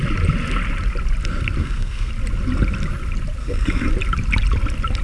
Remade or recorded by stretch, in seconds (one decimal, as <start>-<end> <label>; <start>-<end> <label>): 0.0-1.6 recorded; 1.6-2.1 remade; 2.1-3.4 recorded; 3.4-3.9 remade; 3.9-5.0 recorded